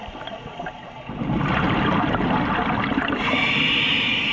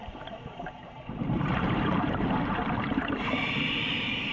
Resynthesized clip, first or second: second